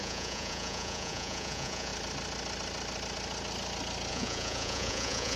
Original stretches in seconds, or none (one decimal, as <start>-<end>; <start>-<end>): 1.9-4.1